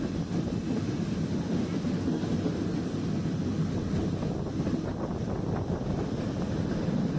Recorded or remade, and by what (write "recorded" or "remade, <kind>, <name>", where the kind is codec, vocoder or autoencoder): recorded